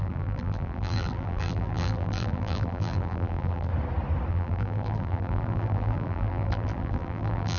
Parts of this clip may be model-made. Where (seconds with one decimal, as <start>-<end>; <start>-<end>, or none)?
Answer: 0.0-3.7; 4.3-7.6